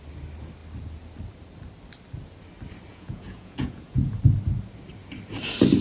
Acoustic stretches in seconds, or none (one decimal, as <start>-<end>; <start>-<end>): 0.0-2.9; 4.2-5.8